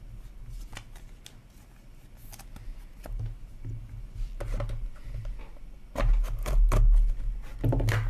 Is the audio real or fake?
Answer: real